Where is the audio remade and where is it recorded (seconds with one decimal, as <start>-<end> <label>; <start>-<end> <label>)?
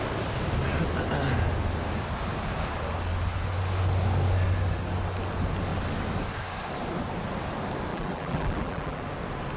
0.0-7.9 recorded; 7.9-9.0 remade; 9.0-9.6 recorded